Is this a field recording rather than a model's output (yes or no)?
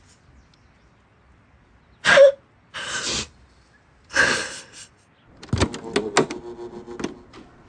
yes